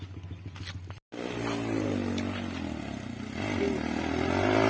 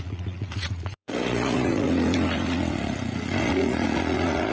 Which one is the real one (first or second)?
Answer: first